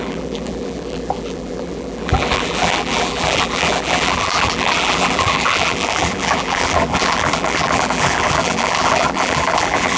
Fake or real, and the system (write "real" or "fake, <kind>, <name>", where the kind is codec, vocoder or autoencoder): fake, vocoder, BigVGAN v2